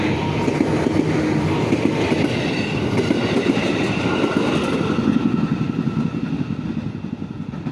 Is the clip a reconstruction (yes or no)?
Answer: no